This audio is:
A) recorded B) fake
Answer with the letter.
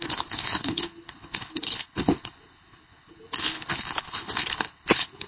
B